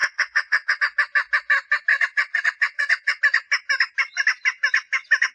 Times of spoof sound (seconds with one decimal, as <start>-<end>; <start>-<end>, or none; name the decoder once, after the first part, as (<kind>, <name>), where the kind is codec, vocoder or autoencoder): 0.0-0.8 (vocoder, WaveNeXt); 1.9-3.2